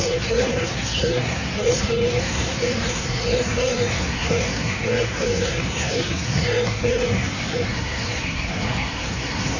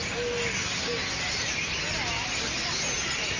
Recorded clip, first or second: second